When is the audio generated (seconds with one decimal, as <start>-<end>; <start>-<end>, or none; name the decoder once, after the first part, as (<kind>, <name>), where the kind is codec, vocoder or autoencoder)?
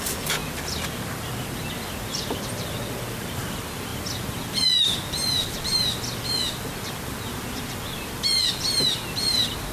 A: 0.0-3.9 (vocoder, BigVGAN v2); 4.4-9.7